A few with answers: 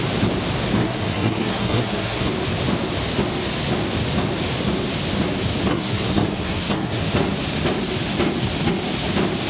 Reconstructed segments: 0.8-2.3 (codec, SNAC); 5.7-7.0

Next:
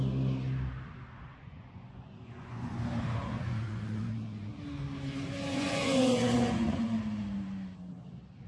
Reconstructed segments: 1.4-2.8 (vocoder, Vocos); 3.2-4.5; 5.5-7.0